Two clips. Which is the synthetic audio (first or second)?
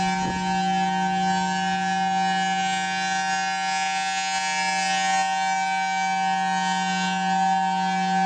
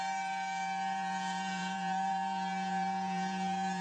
second